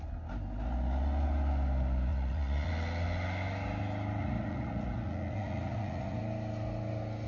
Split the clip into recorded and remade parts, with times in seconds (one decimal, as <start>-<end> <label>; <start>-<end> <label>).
0.0-2.1 recorded; 2.1-2.7 remade; 2.7-4.2 recorded; 4.2-6.2 remade; 6.2-7.3 recorded